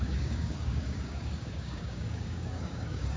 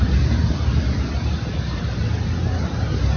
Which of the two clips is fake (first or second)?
first